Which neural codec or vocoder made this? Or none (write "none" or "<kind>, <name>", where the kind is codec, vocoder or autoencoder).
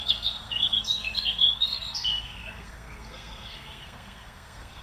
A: codec, SNAC